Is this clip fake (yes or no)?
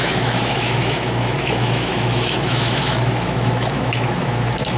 yes